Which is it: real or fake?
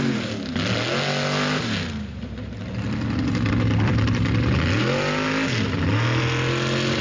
real